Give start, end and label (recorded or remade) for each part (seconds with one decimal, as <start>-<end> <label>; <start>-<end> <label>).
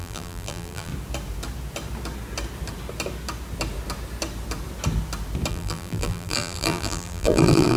0.0-0.9 remade; 0.9-5.5 recorded; 5.5-7.8 remade